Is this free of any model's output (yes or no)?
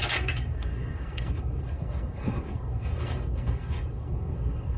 no